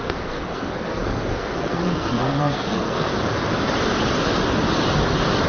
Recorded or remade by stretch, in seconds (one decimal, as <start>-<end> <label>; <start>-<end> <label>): 0.0-3.1 remade; 3.1-5.5 recorded